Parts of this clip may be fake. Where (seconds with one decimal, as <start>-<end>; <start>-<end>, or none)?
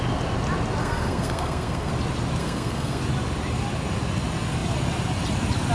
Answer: 0.8-1.9; 2.4-3.0